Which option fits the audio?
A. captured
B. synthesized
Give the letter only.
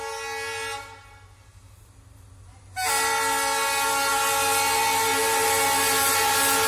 A